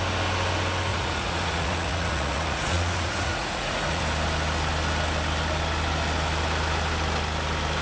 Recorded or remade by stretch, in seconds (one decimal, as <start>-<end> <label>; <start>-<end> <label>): 0.0-0.9 recorded; 0.9-4.0 remade; 4.0-7.8 recorded